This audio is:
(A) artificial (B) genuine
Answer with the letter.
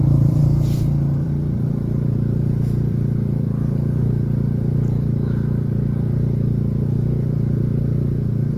A